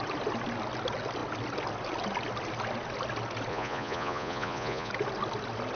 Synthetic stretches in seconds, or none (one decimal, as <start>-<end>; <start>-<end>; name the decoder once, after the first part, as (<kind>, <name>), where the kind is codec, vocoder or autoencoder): 3.5-4.9 (vocoder, Vocos)